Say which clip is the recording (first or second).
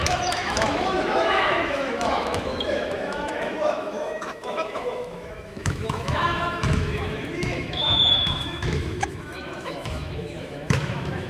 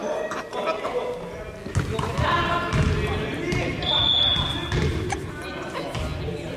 second